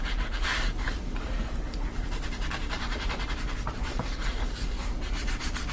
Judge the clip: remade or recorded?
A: remade